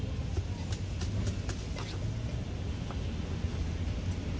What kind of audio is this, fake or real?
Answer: real